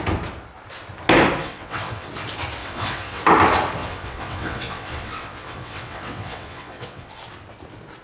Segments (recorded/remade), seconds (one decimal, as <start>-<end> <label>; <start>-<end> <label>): 0.0-1.4 recorded; 1.4-2.1 remade; 2.1-2.6 recorded; 2.6-3.2 remade; 3.2-3.8 recorded; 3.8-7.2 remade; 7.2-8.0 recorded